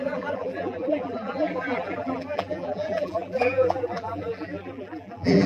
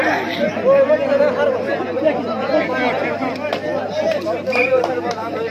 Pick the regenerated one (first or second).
first